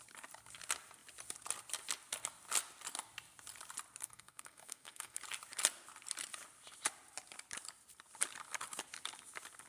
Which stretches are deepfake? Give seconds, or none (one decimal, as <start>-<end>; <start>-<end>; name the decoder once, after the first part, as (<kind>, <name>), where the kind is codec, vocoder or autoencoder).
4.0-5.2 (codec, SNAC)